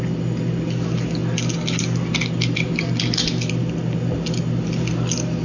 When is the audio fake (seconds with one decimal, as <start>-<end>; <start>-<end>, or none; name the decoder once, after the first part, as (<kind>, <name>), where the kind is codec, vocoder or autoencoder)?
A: none